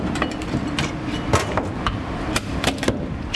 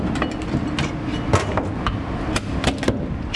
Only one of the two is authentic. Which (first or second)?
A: second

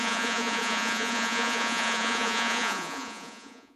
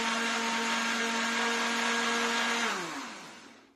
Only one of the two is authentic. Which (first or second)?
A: second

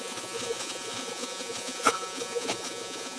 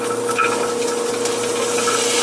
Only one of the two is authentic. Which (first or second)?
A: second